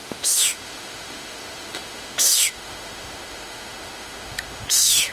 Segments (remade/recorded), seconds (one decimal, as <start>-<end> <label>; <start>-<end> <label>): 0.0-5.1 remade